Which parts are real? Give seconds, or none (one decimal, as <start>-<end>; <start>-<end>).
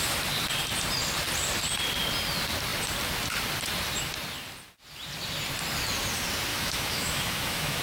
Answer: 0.0-6.5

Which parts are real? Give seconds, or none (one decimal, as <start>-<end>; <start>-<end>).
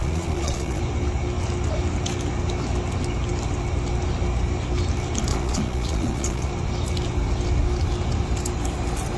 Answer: 0.8-5.3; 6.5-9.2